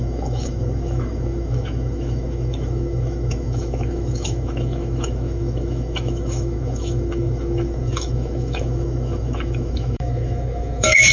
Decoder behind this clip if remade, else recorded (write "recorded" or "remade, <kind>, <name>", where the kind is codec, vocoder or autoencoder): remade, autoencoder, DAC-VAE